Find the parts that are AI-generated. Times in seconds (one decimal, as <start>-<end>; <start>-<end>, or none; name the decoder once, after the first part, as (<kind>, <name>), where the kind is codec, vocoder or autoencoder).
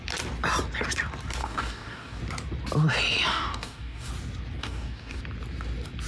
1.4-2.2 (codec, DAC); 3.3-4.1; 4.6-5.2